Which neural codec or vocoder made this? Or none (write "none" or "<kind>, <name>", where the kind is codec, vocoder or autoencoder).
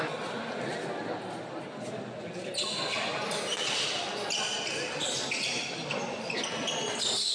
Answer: none